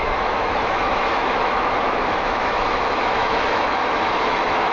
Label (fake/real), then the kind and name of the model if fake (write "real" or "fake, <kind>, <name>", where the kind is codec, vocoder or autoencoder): fake, autoencoder, DAC-VAE